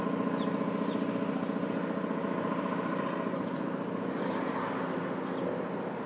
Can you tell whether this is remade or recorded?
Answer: recorded